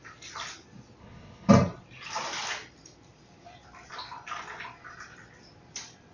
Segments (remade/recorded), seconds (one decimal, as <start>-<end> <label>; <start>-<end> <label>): 0.0-1.0 recorded; 1.0-1.5 remade; 1.5-6.1 recorded